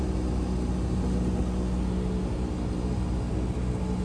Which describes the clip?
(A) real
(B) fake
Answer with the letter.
A